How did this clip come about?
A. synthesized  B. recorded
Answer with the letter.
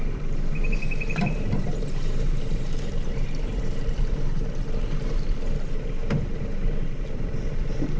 A